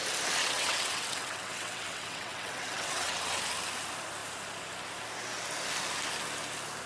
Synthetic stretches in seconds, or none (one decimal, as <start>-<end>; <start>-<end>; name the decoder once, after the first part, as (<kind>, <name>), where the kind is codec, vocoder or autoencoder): 0.4-3.4 (vocoder, WaveNeXt)